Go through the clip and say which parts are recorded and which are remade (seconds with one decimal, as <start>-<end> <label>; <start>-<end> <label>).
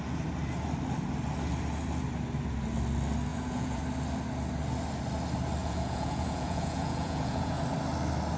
0.0-3.3 recorded; 3.3-3.8 remade; 3.8-5.6 recorded; 5.6-7.6 remade; 7.6-8.4 recorded